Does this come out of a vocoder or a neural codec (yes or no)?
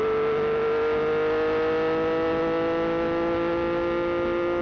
no